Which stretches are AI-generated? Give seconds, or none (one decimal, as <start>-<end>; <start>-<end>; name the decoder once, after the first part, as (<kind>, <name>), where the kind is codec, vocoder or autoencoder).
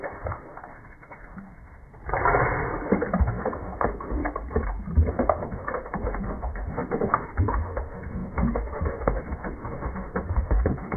0.0-1.9 (autoencoder, DAC-VAE); 3.2-4.2; 5.1-11.0